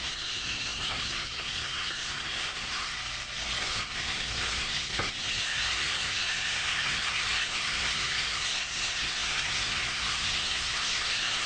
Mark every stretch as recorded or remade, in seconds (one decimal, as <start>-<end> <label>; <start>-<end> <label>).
0.0-3.0 remade; 3.0-3.6 recorded; 3.6-11.5 remade